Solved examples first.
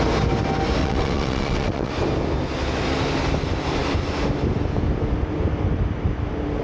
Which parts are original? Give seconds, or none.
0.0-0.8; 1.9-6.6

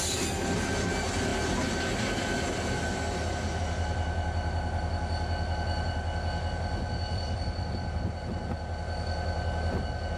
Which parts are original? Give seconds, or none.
0.0-10.2

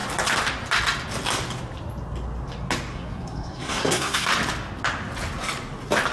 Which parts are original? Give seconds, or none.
0.0-2.9; 4.3-6.1